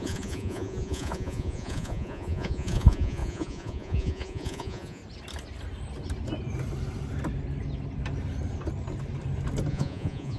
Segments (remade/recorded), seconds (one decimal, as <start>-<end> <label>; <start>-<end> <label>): 0.0-5.0 remade; 5.0-9.7 recorded; 9.7-10.4 remade